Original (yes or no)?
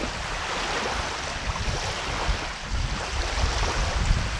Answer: yes